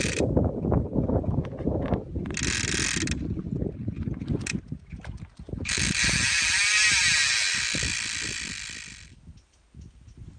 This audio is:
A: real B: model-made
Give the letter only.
A